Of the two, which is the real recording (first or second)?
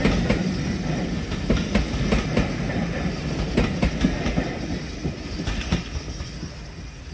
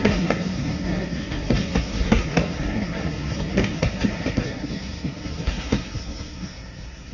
first